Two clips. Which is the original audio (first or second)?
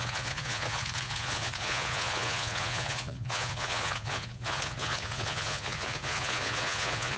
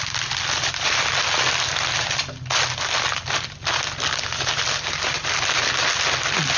second